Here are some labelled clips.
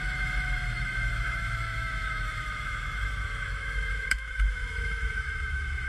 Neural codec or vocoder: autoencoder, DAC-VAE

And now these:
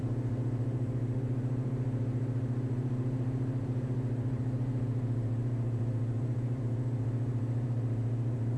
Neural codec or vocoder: vocoder, BigVGAN v2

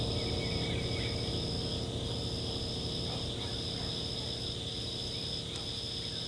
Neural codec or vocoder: none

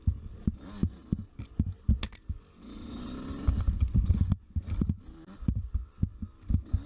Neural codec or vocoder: none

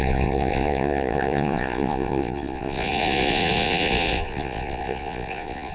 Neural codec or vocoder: vocoder, Vocos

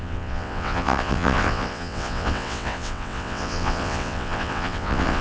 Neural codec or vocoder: vocoder, WaveNeXt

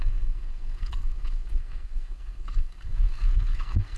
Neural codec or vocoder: codec, SNAC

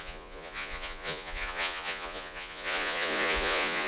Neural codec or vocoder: vocoder, Vocos